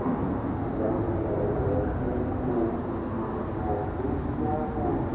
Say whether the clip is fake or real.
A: real